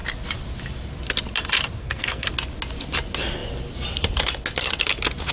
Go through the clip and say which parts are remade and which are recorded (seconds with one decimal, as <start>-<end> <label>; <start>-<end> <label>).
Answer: 0.0-1.8 recorded; 1.8-2.3 remade; 2.3-5.3 recorded